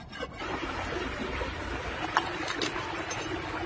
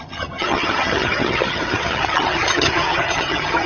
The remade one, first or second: second